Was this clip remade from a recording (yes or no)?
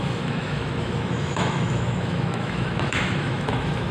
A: yes